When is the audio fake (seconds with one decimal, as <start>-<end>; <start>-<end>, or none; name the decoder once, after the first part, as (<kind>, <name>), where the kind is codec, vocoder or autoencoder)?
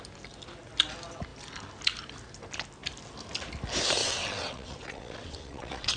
4.0-6.0 (vocoder, WaveNeXt)